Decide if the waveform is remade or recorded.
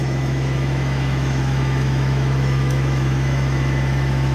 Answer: remade